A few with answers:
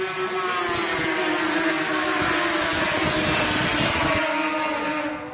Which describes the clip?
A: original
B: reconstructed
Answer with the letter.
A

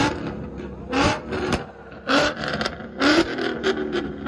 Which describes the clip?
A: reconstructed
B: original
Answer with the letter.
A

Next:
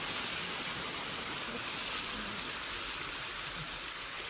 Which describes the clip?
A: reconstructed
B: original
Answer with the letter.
B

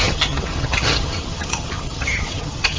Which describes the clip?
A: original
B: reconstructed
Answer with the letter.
B